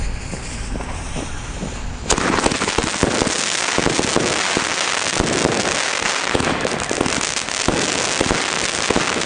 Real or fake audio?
real